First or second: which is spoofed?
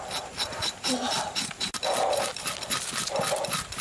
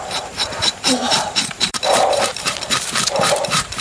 second